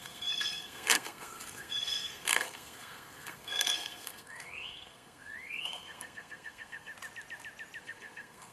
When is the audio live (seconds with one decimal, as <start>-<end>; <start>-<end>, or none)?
6.9-7.8